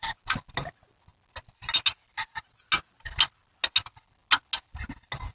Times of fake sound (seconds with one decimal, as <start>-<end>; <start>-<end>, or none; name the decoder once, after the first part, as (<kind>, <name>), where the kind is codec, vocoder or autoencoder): none